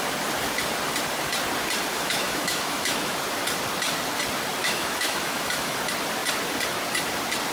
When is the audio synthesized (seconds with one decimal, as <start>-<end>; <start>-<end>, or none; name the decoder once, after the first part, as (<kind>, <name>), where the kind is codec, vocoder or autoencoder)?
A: 1.9-3.2 (autoencoder, DAC-VAE); 4.6-5.8